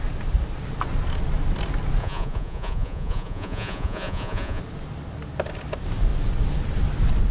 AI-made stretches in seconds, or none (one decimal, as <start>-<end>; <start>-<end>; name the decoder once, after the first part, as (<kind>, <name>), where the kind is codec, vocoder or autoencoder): 2.0-4.6 (vocoder, Vocos)